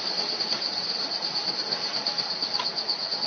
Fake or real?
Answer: real